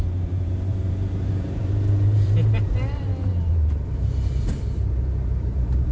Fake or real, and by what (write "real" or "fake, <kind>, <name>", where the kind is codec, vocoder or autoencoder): fake, vocoder, BigVGAN v2